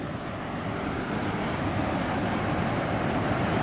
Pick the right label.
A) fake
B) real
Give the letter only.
B